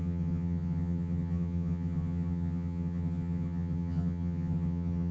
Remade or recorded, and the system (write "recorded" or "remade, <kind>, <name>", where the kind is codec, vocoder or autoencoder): remade, vocoder, HiFi-GAN